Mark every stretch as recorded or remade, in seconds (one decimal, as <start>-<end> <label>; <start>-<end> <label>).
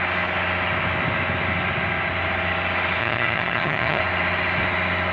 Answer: 0.0-3.0 recorded; 3.0-4.0 remade; 4.0-5.1 recorded